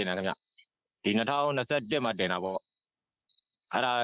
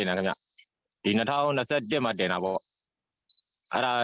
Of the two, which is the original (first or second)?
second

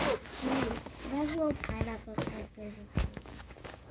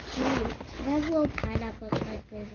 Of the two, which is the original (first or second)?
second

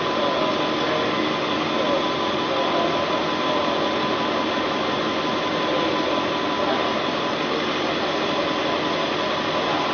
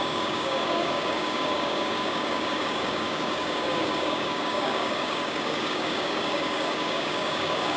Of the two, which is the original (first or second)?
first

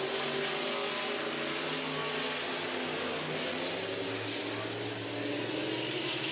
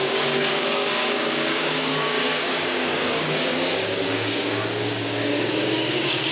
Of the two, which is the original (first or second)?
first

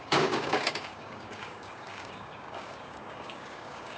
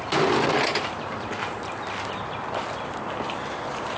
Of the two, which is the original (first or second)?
second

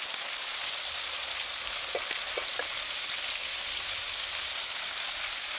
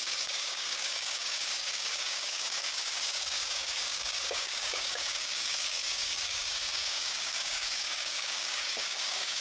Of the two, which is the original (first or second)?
first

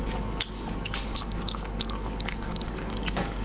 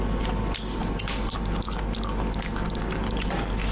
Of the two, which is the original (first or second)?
second